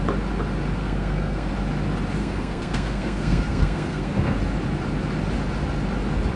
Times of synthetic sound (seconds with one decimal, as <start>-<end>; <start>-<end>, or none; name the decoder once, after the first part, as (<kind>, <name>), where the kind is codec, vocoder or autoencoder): 0.8-1.5 (codec, SNAC); 2.2-4.4